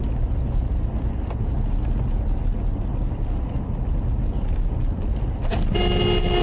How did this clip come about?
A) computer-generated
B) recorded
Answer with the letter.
B